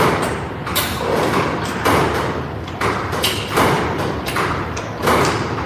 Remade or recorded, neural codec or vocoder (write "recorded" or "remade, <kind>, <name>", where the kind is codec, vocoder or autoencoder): remade, vocoder, BigVGAN v2